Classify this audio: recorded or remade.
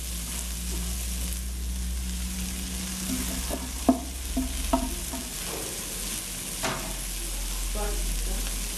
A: recorded